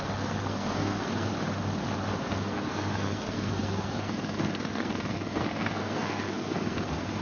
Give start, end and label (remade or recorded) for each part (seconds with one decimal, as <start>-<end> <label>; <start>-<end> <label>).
0.0-1.3 remade; 1.3-2.2 recorded; 2.2-7.2 remade